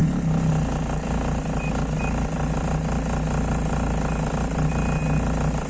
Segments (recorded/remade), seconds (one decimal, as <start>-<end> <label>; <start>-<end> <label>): 0.0-5.7 recorded